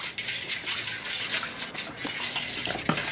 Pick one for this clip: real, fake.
real